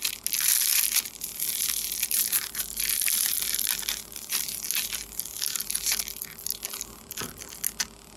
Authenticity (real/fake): real